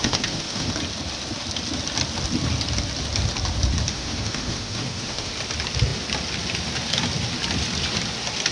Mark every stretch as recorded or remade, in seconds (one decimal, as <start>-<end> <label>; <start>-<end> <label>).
0.0-0.7 remade; 0.7-3.9 recorded; 3.9-5.3 remade; 5.3-8.5 recorded